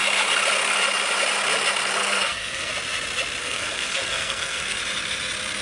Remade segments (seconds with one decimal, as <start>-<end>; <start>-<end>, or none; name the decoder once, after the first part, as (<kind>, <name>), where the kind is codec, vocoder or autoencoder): 2.0-2.7 (codec, SNAC); 3.4-4.8